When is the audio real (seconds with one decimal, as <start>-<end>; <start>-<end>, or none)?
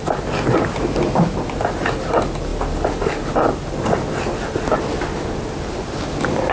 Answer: 0.0-6.5